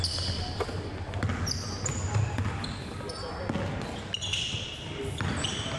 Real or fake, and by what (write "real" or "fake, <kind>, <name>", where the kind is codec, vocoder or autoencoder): real